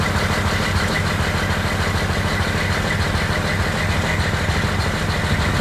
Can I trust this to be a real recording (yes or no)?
yes